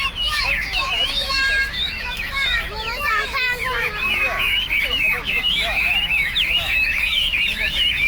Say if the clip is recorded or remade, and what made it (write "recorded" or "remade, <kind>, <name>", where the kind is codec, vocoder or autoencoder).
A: remade, autoencoder, DAC-VAE